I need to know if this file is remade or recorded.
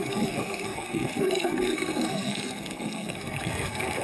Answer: remade